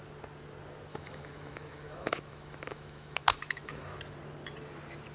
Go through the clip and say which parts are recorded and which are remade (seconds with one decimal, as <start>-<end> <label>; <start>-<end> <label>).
0.0-0.9 recorded; 0.9-4.0 remade; 4.0-5.1 recorded